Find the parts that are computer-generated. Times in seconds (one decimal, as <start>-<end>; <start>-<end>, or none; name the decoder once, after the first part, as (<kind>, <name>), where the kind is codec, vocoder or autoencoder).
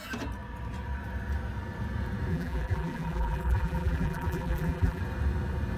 2.3-5.0 (vocoder, BigVGAN v2)